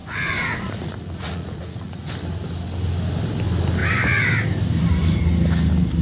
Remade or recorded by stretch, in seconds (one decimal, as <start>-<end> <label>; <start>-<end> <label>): 0.0-2.1 remade; 2.1-6.0 recorded